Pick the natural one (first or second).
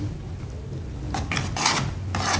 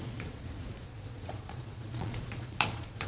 first